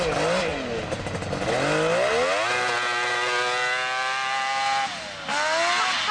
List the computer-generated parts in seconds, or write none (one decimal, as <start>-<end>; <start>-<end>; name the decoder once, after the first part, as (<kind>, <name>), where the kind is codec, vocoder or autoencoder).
none